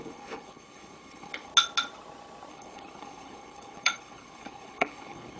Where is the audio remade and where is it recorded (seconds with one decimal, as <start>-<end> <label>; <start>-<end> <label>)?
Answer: 0.0-1.5 remade; 1.5-2.5 recorded; 2.5-5.4 remade

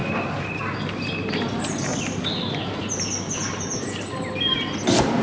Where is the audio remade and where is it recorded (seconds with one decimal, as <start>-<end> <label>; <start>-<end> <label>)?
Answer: 0.0-5.2 recorded

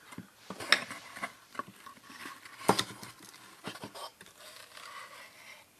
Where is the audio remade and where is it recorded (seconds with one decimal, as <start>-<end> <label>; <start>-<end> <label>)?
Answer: 0.0-5.8 recorded

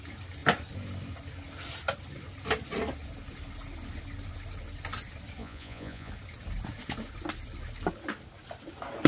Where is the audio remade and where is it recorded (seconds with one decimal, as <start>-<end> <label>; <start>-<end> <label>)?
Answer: 0.0-5.4 recorded; 5.4-6.1 remade; 6.1-9.1 recorded

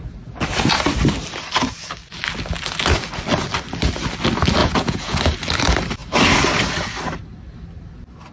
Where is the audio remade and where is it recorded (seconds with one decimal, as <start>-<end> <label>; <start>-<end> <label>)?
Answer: 0.0-4.6 recorded; 4.6-5.2 remade; 5.2-8.3 recorded